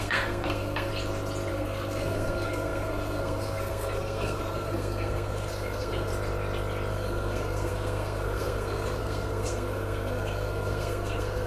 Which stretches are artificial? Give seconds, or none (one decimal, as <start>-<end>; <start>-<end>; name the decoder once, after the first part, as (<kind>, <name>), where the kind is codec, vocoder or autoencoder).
0.0-0.9 (codec, SNAC); 1.5-6.1; 6.9-11.5